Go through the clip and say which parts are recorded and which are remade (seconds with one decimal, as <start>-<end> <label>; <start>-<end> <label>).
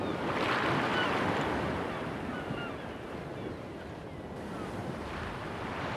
0.0-4.8 recorded; 4.8-5.3 remade; 5.3-6.0 recorded